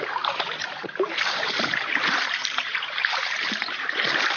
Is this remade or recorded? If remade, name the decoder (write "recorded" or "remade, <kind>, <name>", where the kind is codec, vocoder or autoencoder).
remade, vocoder, BigVGAN v2